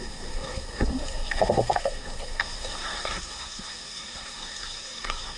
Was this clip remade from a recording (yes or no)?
yes